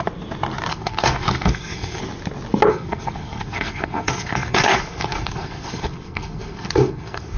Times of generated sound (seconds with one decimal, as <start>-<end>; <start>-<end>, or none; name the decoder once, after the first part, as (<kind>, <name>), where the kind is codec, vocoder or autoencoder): 0.7-2.0 (codec, SNAC); 2.7-7.4